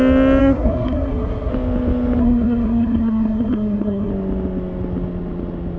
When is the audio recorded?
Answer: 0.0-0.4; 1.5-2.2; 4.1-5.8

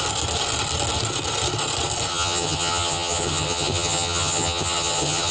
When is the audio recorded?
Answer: 0.0-2.1

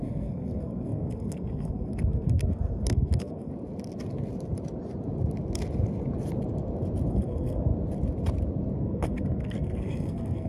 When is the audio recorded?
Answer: 3.5-7.1; 7.7-8.8

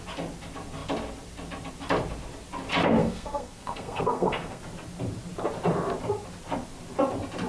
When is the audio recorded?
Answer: 0.0-3.0; 4.6-7.5

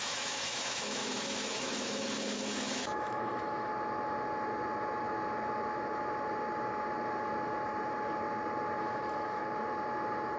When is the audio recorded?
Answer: 3.7-8.8; 9.4-10.4

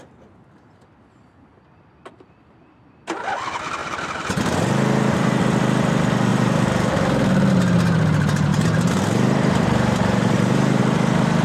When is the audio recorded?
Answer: 0.0-3.8; 5.4-6.3; 7.5-8.5; 10.8-11.4